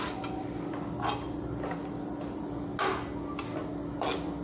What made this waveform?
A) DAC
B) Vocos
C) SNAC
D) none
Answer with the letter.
D